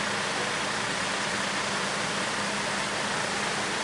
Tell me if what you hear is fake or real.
fake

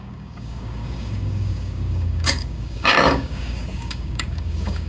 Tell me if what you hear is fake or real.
fake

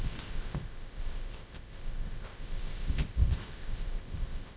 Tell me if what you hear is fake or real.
fake